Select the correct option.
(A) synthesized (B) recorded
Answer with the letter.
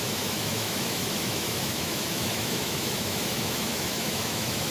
A